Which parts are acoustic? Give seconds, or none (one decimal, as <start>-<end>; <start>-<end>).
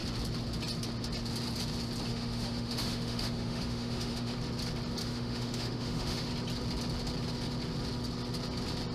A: 0.0-2.1; 4.3-5.0; 6.3-8.9